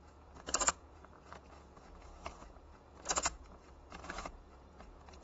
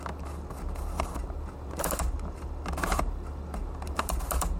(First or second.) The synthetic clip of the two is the first